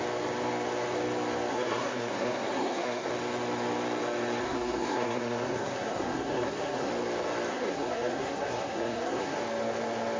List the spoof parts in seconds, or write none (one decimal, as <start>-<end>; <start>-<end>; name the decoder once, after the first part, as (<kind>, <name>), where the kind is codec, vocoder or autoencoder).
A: 1.5-3.1 (codec, SNAC); 4.4-6.9; 7.5-9.4